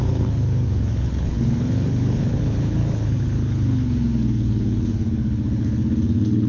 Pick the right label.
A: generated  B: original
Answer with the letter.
A